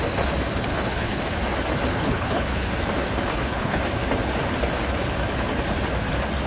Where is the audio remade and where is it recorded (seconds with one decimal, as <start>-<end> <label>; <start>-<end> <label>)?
0.0-0.7 recorded; 0.7-1.2 remade; 1.2-1.9 recorded; 1.9-2.7 remade; 2.7-3.3 recorded; 3.3-3.8 remade; 3.8-6.5 recorded